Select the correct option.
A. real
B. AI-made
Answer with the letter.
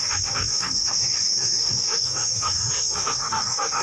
B